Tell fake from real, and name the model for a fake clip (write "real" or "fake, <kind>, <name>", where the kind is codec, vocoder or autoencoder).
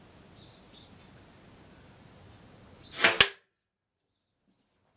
real